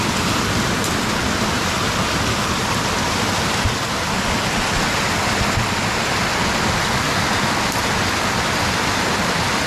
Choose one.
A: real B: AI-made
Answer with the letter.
A